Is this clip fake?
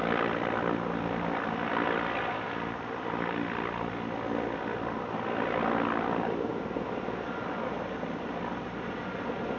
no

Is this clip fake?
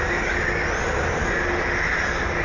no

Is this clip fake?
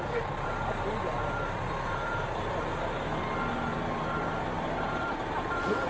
yes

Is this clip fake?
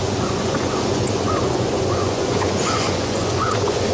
yes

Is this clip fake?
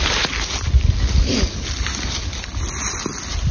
no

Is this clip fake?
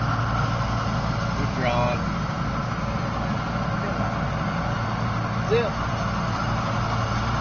no